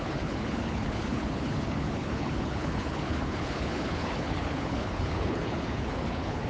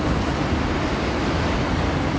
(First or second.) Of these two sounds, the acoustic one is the second